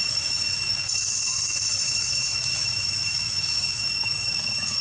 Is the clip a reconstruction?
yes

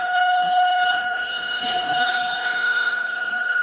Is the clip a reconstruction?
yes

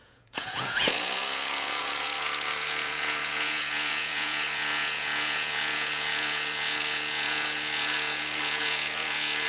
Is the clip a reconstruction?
yes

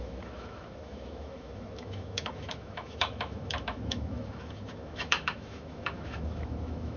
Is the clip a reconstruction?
yes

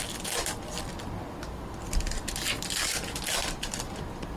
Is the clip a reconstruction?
no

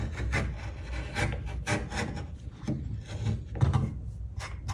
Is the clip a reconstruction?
no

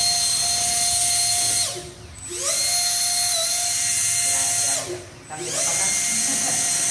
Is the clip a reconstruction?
no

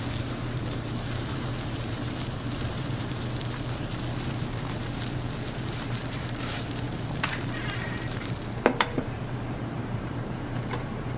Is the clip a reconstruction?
yes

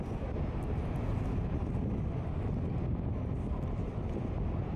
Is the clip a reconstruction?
no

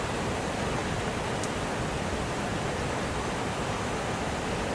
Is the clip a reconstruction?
no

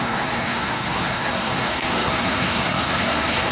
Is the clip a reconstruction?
yes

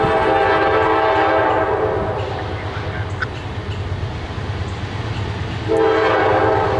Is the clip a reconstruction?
no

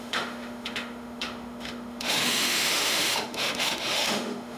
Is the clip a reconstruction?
yes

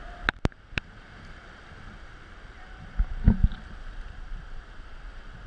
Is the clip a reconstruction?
no